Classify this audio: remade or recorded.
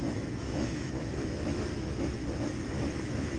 remade